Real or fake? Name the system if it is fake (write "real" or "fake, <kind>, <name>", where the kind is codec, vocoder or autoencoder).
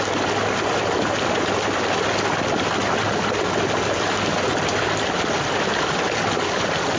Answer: real